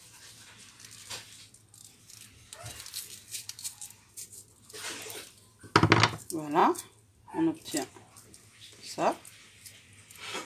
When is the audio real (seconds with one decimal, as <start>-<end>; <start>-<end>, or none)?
0.0-10.4